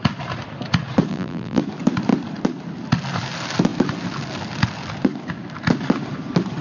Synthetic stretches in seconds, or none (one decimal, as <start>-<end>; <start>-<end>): 1.1-1.6